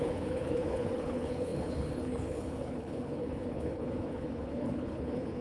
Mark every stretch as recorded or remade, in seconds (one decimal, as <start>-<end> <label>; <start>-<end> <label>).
0.0-5.4 remade